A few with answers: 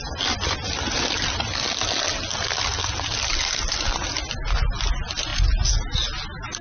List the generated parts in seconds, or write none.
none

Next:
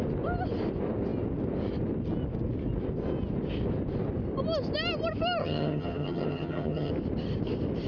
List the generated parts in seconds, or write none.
5.4-6.9 (vocoder, HiFi-GAN)